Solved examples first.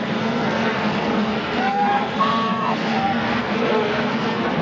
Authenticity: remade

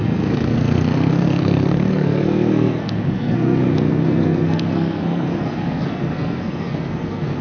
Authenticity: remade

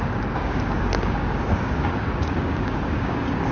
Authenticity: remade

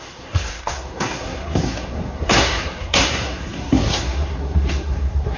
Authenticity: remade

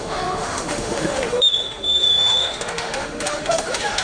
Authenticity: remade